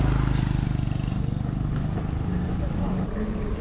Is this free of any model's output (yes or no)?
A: yes